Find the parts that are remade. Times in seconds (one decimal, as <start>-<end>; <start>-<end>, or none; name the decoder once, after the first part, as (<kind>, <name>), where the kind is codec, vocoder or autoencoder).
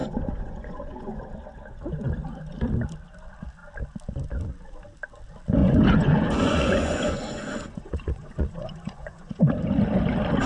0.0-1.2 (vocoder, Vocos); 5.6-9.4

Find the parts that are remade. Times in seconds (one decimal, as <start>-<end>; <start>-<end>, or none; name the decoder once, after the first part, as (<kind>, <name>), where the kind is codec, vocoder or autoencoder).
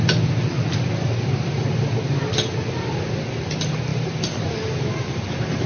3.9-5.7 (vocoder, BigVGAN v2)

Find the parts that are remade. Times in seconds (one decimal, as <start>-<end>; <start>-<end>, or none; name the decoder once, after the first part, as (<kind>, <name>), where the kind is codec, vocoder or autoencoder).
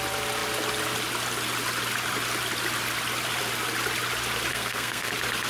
4.5-5.1 (codec, SNAC)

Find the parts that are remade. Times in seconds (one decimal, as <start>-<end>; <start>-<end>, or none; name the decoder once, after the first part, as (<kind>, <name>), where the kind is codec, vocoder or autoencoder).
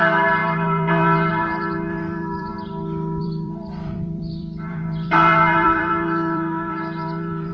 0.0-2.5 (vocoder, BigVGAN v2); 3.2-7.5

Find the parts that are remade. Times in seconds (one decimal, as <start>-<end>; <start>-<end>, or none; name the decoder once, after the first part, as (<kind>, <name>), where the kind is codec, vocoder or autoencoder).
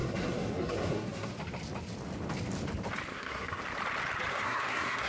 0.0-1.3 (codec, SNAC); 3.1-3.6; 4.3-5.1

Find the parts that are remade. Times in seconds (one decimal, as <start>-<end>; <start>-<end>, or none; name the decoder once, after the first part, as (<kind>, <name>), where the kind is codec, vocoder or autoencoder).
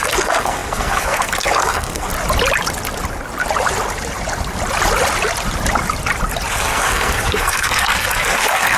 0.0-2.1 (codec, SNAC); 6.5-8.8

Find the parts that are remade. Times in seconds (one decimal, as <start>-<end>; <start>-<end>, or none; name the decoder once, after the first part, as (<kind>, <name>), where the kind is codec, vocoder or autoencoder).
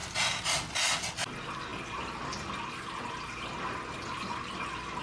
none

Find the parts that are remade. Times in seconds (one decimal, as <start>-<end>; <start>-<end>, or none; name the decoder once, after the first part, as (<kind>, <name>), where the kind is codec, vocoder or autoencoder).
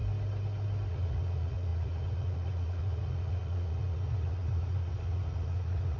0.9-6.0 (vocoder, Vocos)